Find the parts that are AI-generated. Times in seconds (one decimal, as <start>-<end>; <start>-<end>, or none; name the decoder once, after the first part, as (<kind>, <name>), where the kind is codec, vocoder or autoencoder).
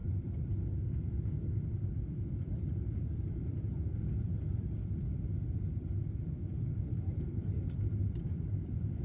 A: 0.0-9.0 (vocoder, BigVGAN v2)